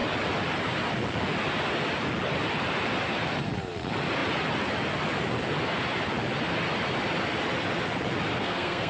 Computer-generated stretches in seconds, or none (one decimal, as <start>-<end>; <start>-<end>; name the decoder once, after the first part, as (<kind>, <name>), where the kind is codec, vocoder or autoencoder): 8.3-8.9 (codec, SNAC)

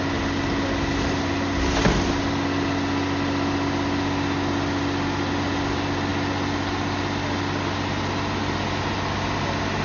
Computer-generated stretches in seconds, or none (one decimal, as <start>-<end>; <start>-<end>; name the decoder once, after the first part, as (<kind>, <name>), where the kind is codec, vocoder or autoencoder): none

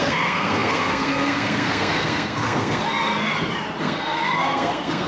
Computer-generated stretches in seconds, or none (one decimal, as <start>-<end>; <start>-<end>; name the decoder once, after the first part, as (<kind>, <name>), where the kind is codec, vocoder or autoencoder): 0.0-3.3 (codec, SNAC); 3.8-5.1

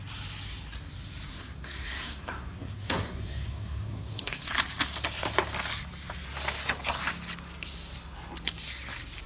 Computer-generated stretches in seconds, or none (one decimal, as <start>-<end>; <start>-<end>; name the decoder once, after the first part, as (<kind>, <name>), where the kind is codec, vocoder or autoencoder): 1.3-4.5 (codec, SNAC)